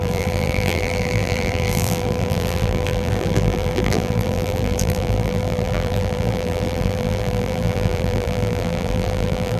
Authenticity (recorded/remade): remade